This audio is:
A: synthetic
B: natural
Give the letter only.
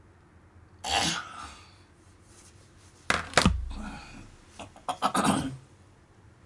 B